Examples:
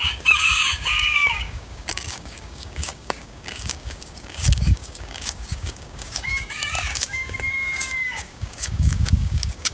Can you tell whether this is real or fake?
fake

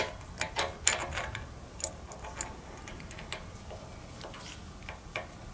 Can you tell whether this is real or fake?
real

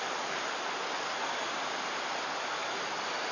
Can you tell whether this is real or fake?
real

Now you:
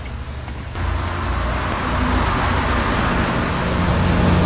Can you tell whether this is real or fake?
real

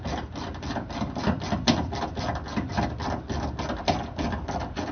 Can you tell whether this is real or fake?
real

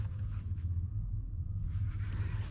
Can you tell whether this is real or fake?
real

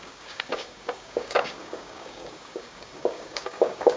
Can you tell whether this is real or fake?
fake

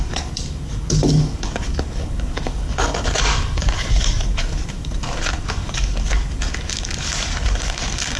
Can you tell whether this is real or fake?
fake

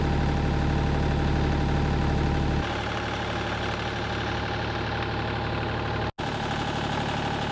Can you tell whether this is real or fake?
real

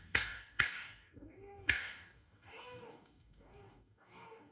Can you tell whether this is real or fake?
fake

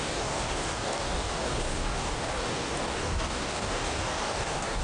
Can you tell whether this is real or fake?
fake